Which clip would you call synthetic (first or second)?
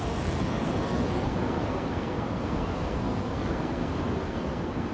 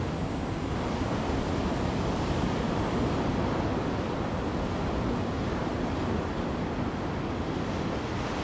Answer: first